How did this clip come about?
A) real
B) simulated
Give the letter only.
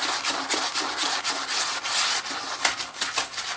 A